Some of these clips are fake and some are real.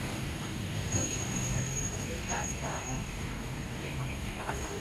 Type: fake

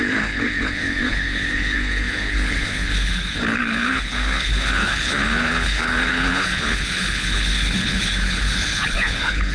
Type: fake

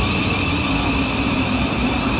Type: real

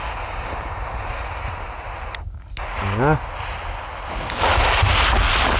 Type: real